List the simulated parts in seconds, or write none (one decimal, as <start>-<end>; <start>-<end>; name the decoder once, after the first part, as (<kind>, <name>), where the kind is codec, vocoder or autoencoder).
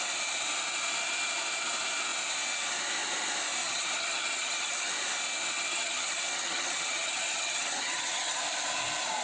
3.6-4.9 (vocoder, HiFi-GAN); 5.7-8.4